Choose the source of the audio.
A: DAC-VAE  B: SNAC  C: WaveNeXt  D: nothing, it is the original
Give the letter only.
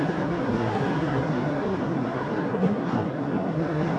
B